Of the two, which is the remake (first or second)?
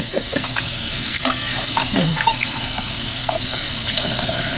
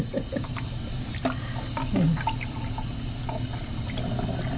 first